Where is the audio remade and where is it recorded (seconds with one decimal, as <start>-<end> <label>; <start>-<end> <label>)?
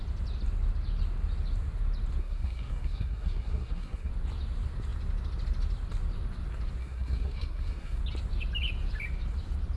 0.0-2.2 recorded; 2.2-4.1 remade; 4.1-6.8 recorded; 6.8-8.0 remade; 8.0-9.8 recorded